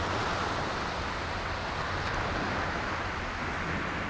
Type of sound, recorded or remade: recorded